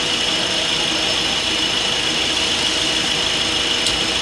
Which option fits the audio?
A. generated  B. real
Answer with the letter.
B